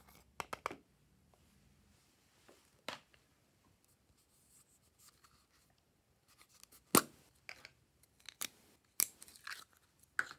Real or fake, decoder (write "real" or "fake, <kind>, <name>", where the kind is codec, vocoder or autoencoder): real